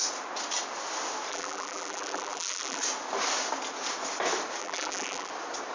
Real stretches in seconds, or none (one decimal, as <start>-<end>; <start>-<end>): 0.0-1.3; 2.8-4.6; 5.3-5.7